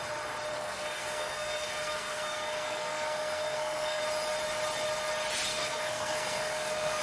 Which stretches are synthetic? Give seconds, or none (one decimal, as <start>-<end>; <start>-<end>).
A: 0.5-4.0; 5.5-7.0